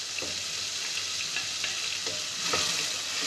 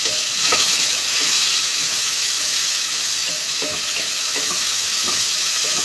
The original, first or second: first